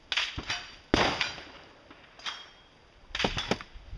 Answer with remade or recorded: recorded